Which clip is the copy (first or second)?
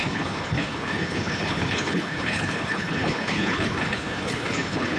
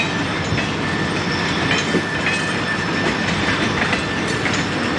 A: first